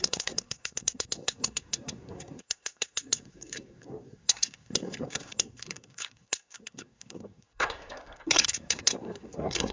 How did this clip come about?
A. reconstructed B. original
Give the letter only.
A